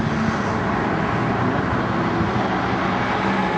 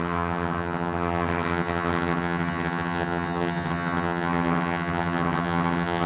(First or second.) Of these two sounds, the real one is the first